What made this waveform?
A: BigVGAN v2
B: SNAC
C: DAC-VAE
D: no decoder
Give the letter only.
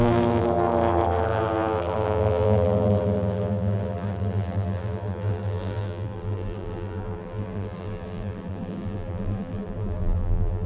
A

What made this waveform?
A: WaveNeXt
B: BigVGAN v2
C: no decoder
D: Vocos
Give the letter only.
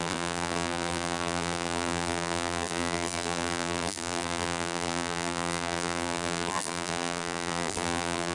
B